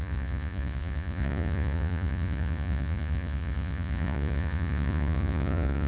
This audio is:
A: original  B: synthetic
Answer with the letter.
B